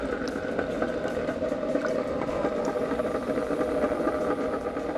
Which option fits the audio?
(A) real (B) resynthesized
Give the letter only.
B